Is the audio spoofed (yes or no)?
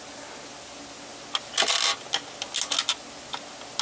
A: no